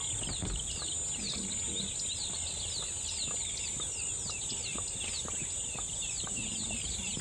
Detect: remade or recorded recorded